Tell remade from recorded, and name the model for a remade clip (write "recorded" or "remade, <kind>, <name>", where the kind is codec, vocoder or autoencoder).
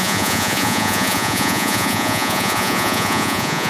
remade, vocoder, Vocos